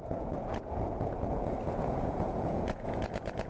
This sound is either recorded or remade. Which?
remade